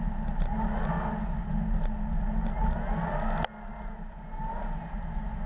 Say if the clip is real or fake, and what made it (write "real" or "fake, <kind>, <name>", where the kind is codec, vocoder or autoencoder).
real